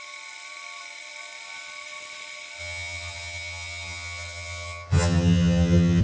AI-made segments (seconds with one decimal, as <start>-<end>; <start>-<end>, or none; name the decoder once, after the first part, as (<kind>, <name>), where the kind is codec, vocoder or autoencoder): 2.6-6.0 (vocoder, HiFi-GAN)